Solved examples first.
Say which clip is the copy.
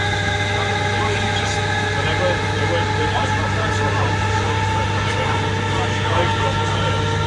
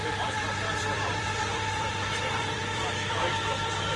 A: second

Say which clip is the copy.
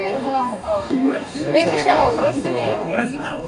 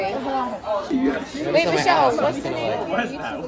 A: first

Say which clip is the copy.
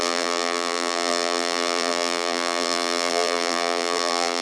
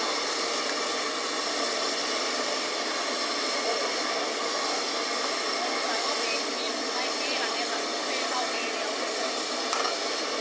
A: first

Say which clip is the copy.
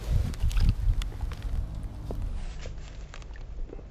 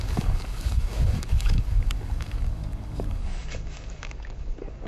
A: second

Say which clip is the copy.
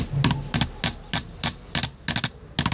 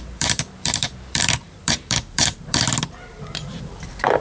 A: second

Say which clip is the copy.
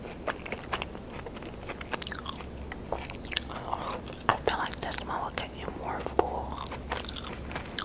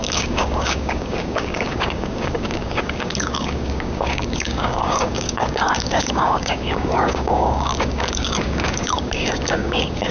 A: second